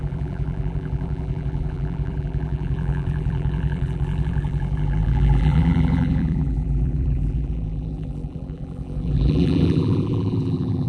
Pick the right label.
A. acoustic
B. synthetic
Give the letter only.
B